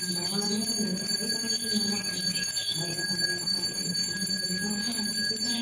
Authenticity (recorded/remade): recorded